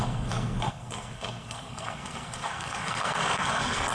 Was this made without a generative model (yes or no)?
no